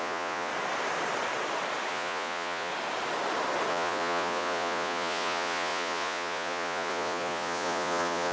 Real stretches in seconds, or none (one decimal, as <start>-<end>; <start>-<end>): 0.5-1.9; 2.7-3.7